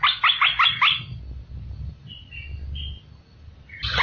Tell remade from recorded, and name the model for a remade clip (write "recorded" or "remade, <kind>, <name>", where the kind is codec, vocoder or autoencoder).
recorded